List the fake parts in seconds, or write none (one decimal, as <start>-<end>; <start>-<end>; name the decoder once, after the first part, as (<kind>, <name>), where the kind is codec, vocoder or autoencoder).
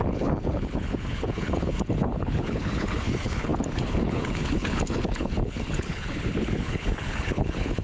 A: 0.0-7.8 (codec, HILCodec)